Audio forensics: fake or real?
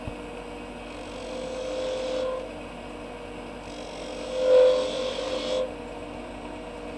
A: real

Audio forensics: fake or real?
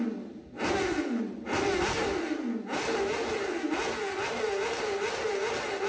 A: real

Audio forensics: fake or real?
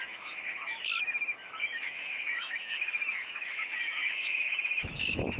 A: fake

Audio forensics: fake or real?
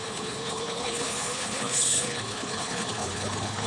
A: fake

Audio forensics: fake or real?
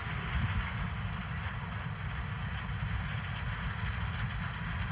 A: real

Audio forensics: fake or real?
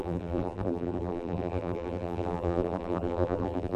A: fake